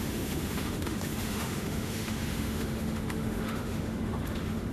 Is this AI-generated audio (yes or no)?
yes